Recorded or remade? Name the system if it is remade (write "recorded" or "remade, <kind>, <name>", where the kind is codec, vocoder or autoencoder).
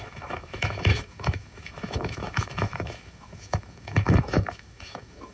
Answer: remade, autoencoder, DAC-VAE